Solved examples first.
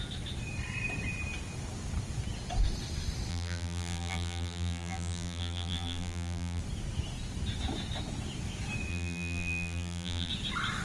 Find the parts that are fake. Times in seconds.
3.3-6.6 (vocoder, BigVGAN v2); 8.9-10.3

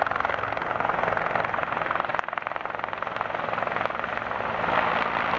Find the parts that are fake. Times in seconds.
none

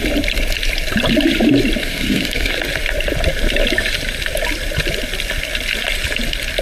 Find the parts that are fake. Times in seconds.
1.8-2.5 (codec, SNAC)

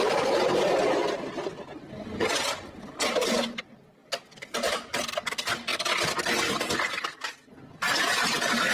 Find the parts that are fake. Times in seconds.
4.0-5.0 (vocoder, BigVGAN v2); 5.7-7.3

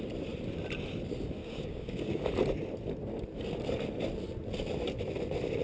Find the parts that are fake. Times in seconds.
1.4-2.3 (codec, DAC)